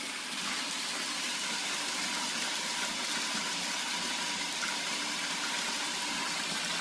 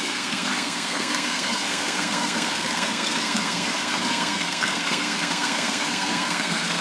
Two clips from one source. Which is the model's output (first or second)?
second